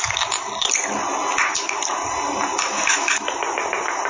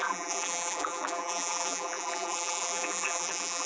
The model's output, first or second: second